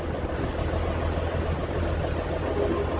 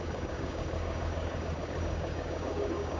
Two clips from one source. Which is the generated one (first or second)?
second